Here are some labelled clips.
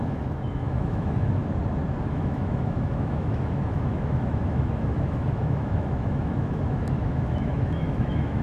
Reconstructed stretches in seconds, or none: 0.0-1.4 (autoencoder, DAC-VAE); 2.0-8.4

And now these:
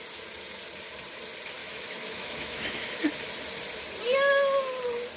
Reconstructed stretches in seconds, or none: 1.6-2.9 (autoencoder, DAC-VAE)